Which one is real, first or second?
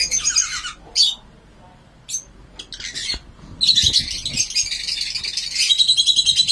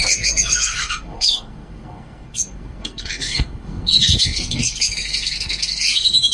first